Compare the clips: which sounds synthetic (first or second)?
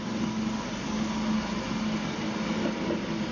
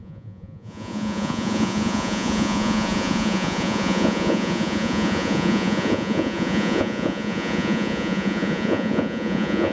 second